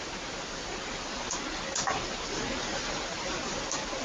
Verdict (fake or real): real